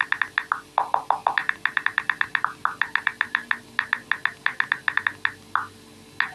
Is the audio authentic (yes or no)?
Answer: yes